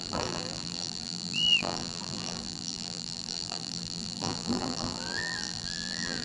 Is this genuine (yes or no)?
no